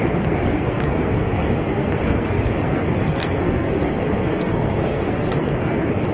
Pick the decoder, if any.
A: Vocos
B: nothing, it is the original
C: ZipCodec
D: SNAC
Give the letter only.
D